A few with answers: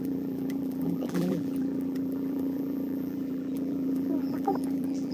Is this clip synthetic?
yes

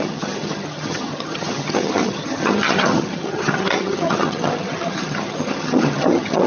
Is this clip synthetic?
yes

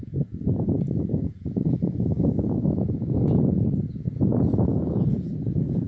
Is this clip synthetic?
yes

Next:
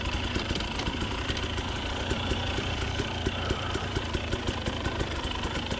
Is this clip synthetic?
yes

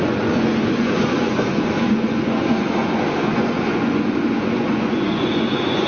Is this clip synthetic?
yes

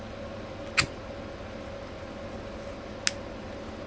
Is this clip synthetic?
no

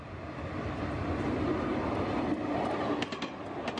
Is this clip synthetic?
no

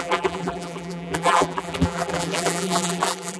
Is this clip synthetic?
yes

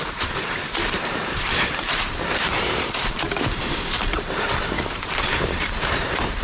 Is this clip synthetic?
yes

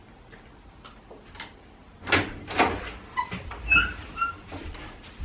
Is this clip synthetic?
no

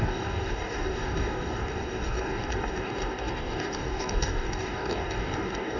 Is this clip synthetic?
yes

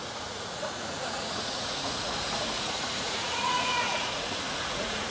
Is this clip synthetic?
yes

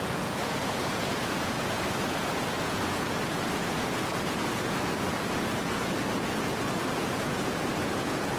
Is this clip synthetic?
yes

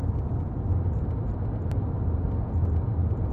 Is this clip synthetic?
no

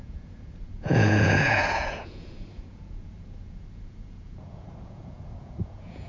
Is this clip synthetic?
yes